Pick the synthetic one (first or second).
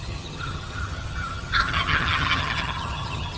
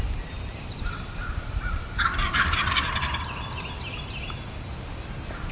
first